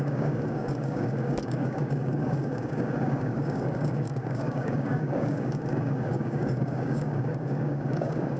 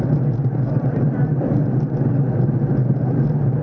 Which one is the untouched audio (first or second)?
second